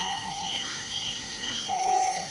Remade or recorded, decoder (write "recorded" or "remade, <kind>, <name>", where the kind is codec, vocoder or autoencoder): remade, codec, SNAC